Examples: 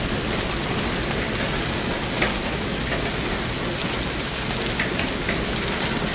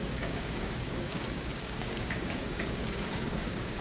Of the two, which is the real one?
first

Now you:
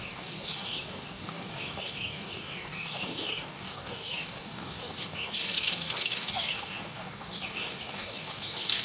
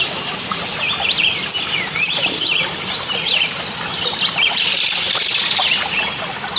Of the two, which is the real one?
second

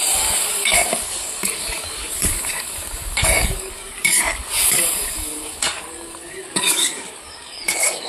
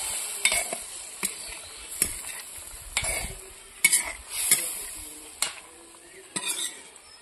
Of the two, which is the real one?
second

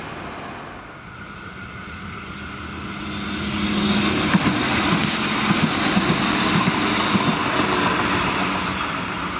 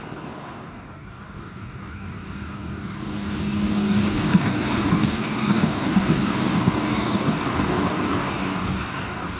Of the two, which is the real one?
first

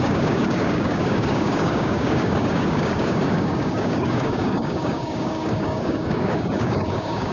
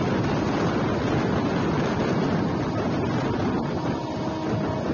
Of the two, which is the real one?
second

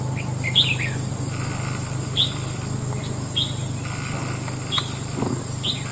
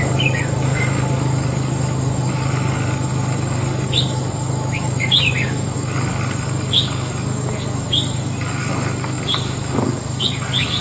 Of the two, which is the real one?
first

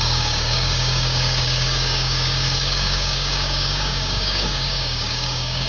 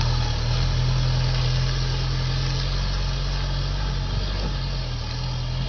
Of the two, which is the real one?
second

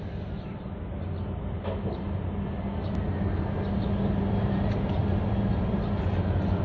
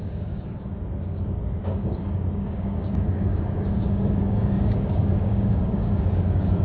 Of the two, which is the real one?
first